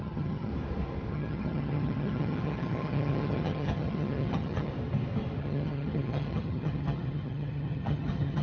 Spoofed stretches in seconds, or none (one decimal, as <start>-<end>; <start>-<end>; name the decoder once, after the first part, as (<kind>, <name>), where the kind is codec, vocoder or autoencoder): 0.0-0.5 (vocoder, HiFi-GAN); 1.1-4.7; 5.4-8.4